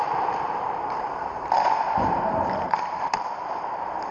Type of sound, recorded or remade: remade